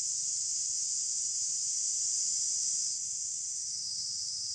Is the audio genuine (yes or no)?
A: yes